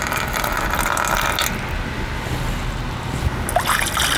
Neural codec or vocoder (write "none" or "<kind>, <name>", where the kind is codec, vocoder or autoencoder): none